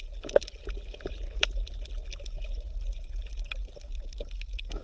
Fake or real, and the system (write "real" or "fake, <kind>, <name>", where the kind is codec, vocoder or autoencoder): real